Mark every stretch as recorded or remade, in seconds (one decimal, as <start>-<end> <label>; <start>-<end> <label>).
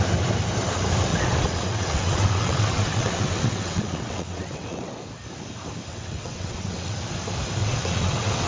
0.0-1.1 recorded; 1.1-5.0 remade; 5.0-5.9 recorded; 5.9-7.0 remade; 7.0-7.6 recorded; 7.6-8.5 remade